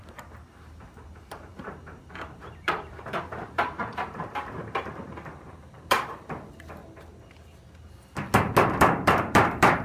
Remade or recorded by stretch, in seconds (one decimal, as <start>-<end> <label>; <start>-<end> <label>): 0.0-6.8 remade; 6.8-8.8 recorded; 8.8-9.8 remade